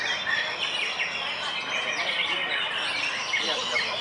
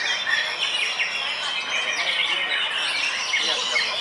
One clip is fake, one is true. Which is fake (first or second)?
first